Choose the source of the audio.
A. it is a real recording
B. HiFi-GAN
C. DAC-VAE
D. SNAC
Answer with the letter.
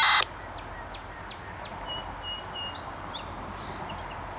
A